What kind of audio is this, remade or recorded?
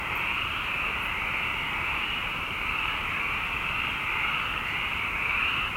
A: remade